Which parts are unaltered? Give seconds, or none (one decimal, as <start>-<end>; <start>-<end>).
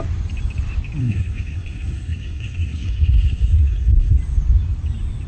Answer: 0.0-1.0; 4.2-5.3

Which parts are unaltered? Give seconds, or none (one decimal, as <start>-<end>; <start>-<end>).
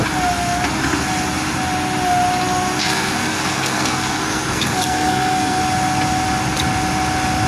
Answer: 0.0-2.8; 5.6-7.5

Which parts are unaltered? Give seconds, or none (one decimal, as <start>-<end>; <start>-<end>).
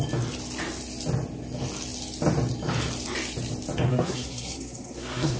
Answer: 0.0-3.9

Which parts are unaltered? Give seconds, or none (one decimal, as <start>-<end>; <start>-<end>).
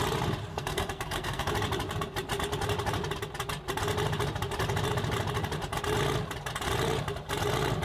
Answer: 0.0-0.5; 1.5-7.8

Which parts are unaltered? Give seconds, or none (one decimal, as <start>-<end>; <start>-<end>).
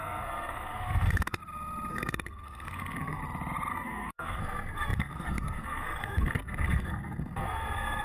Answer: 1.4-1.9; 3.2-3.7